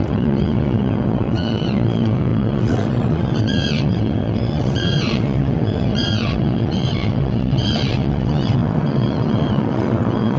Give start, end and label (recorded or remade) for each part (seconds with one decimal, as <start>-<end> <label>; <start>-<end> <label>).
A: 0.0-10.4 remade